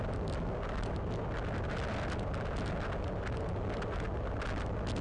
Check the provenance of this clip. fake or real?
real